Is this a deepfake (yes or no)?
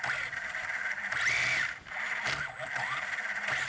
no